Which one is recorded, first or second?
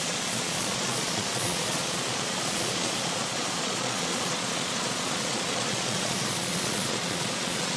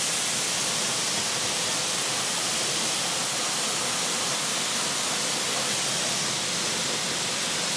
second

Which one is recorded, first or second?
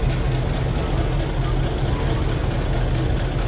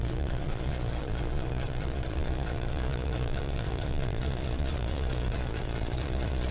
first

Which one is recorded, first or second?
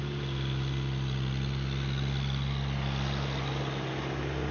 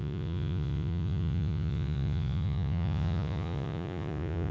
first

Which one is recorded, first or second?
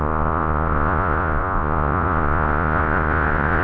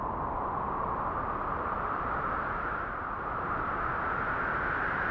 second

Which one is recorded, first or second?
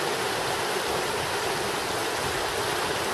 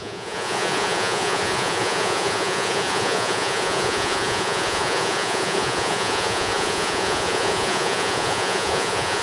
first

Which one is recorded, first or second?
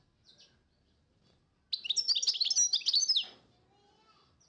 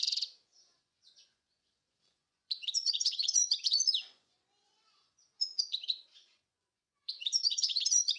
first